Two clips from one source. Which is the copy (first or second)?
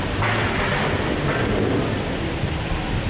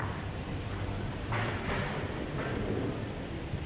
second